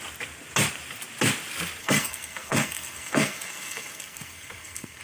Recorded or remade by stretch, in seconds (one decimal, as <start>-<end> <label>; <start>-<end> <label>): 0.0-1.8 recorded; 1.8-5.0 remade